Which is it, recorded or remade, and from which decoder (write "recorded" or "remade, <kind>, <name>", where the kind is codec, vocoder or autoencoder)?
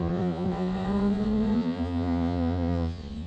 remade, vocoder, Vocos